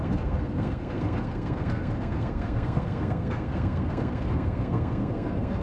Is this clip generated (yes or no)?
yes